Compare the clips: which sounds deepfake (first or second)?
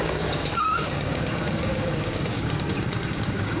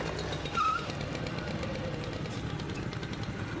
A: first